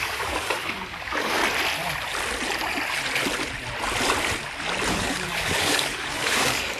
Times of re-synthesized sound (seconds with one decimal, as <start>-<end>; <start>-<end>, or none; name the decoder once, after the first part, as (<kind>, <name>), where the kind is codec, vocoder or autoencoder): 0.0-1.4 (codec, DAC); 4.9-6.8